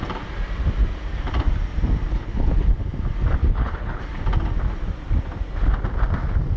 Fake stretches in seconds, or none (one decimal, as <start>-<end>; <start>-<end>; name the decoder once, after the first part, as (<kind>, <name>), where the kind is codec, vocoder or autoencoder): 2.1-2.7 (codec, HILCodec); 3.4-4.0